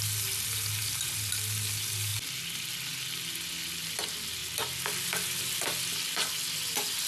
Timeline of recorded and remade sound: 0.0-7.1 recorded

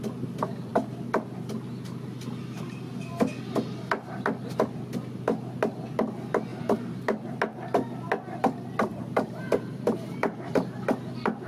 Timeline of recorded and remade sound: 0.0-6.5 recorded; 6.5-7.3 remade; 7.3-8.9 recorded; 8.9-10.5 remade; 10.5-11.5 recorded

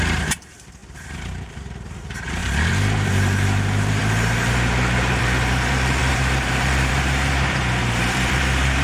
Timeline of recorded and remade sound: 0.0-8.8 remade

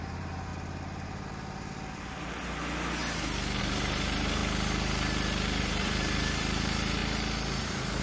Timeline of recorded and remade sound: 0.0-0.5 remade; 0.5-3.6 recorded; 3.6-4.4 remade; 4.4-5.6 recorded; 5.6-7.0 remade; 7.0-7.6 recorded; 7.6-8.0 remade

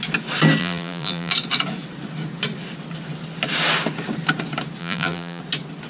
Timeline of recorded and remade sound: 0.0-0.6 recorded; 0.6-1.3 remade; 1.3-4.8 recorded; 4.8-5.4 remade; 5.4-5.9 recorded

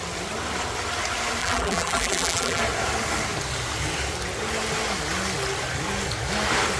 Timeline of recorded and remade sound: 0.0-1.4 recorded; 1.4-2.6 remade; 2.6-6.8 recorded

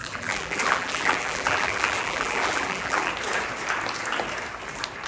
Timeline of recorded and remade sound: 0.0-3.1 remade; 3.1-5.1 recorded

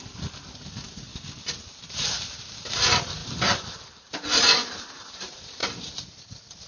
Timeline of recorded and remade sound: 0.0-1.1 remade; 1.1-1.9 recorded; 1.9-6.7 remade